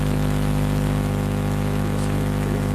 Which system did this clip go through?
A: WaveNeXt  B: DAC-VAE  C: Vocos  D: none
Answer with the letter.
B